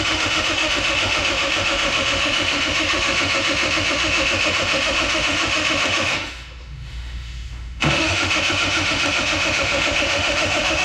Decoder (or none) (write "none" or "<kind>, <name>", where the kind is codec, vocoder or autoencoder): autoencoder, DAC-VAE